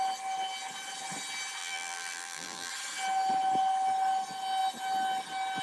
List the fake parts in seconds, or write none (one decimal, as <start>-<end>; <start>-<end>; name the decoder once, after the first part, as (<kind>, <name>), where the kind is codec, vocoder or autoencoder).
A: 1.6-2.7 (vocoder, BigVGAN v2)

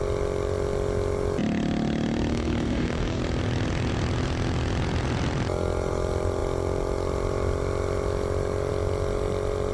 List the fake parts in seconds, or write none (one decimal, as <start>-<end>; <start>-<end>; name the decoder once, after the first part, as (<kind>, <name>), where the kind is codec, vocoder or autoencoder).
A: 2.3-3.2 (codec, DAC)

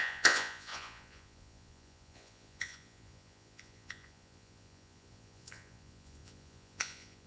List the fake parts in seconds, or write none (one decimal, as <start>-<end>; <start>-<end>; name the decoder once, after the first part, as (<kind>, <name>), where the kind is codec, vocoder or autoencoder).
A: 0.0-7.3 (vocoder, Vocos)

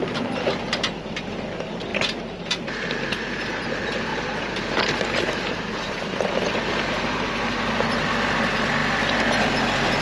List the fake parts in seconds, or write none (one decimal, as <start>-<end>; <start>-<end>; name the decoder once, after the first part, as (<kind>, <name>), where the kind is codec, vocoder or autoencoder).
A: 0.0-1.2 (vocoder, BigVGAN v2); 1.9-3.5; 4.1-7.3